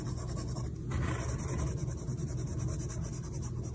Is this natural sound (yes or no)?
yes